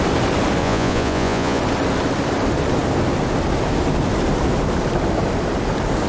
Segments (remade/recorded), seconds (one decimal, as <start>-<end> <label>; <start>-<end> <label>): 0.0-0.6 recorded; 0.6-1.6 remade; 1.6-6.1 recorded